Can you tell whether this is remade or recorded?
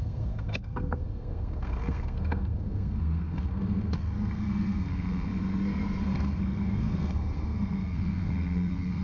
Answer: remade